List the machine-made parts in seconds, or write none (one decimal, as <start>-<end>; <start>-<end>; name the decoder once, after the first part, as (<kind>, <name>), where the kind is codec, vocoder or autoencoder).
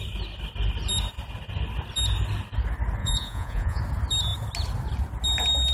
3.0-3.8 (vocoder, Vocos)